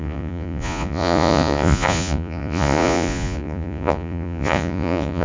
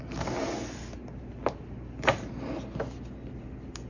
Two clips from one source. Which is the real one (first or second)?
second